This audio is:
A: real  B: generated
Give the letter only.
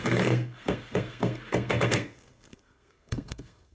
B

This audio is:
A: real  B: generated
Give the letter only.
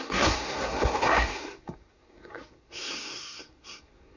B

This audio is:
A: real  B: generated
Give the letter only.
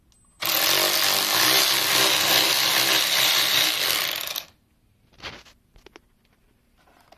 A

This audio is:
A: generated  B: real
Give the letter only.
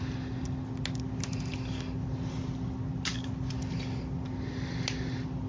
B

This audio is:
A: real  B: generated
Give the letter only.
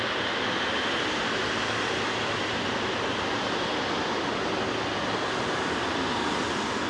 B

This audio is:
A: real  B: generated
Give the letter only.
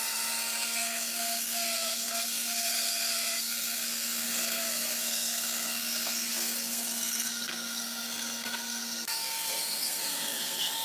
B